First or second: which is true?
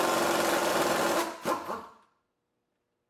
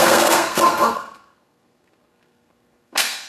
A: first